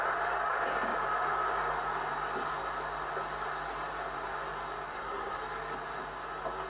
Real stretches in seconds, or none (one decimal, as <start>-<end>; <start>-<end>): 0.0-4.9; 5.4-6.7